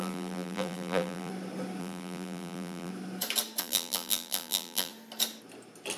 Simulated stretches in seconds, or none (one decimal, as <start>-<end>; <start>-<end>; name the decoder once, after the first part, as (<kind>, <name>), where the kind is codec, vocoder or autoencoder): 0.0-1.3 (vocoder, BigVGAN v2); 1.8-2.9; 3.6-4.9